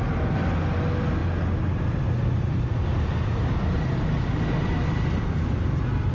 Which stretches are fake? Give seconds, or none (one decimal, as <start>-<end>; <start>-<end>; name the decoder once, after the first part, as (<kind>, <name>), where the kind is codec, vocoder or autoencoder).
none